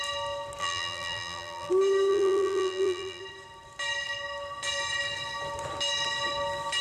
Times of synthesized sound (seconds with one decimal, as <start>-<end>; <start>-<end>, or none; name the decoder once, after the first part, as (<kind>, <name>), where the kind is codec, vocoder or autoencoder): 0.6-1.7 (vocoder, BigVGAN v2); 2.1-3.2